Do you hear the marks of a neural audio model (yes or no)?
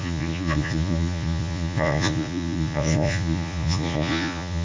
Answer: yes